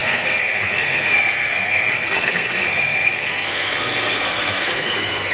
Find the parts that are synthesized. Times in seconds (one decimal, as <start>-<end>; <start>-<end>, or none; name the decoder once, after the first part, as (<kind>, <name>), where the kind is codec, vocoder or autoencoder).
0.0-5.3 (codec, SNAC)